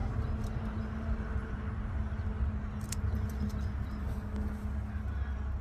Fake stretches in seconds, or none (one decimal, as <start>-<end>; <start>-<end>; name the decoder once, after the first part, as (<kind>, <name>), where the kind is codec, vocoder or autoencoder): none